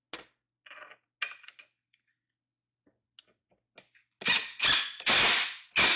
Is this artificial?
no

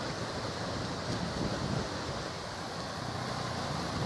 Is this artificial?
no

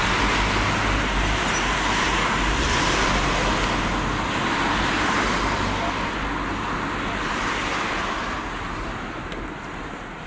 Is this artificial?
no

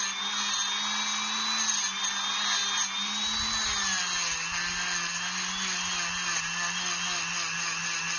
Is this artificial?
no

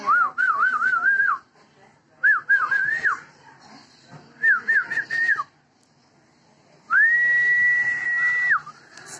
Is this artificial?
no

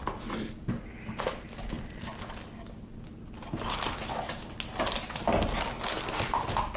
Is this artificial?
no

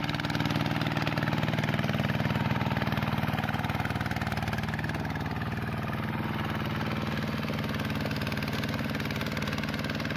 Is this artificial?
no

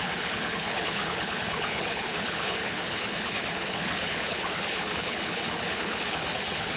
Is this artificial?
yes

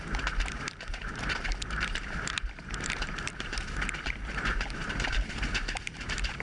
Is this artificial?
yes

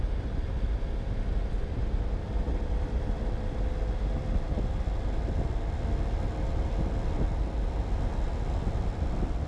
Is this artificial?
no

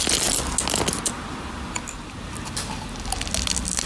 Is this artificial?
no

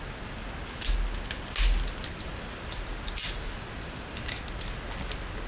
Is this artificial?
no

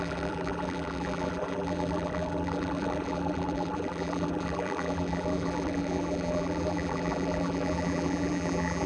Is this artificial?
yes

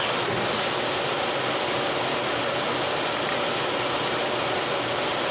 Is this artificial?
no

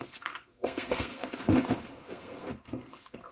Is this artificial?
yes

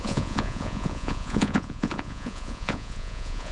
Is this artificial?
yes